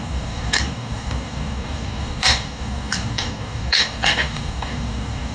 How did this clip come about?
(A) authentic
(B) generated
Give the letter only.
B